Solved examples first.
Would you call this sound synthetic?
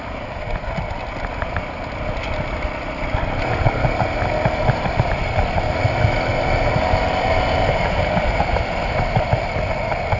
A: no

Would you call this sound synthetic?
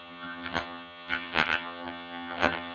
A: yes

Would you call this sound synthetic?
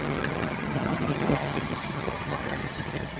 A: yes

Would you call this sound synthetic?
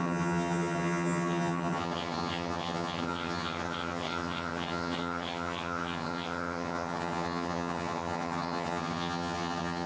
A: yes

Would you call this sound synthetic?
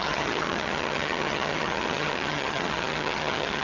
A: yes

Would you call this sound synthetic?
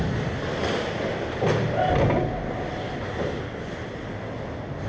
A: no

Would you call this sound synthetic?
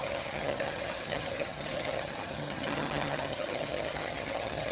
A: yes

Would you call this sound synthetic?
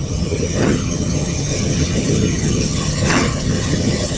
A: yes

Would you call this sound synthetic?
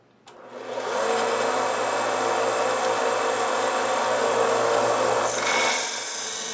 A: no